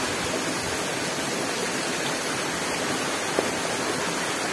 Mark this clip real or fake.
real